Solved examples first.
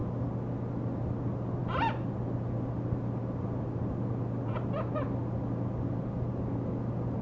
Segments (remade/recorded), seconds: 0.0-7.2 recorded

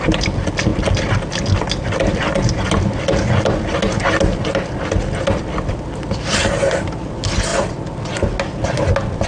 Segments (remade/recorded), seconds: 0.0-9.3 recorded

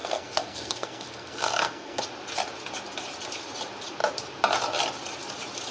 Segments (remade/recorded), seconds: 0.0-2.0 remade; 2.0-5.7 recorded

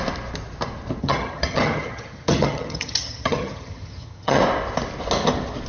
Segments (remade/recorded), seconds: 0.0-1.0 recorded; 1.0-4.4 remade; 4.4-5.7 recorded